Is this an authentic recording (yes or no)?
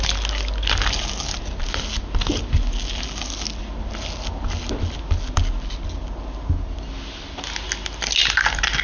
yes